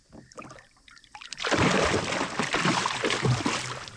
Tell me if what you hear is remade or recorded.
recorded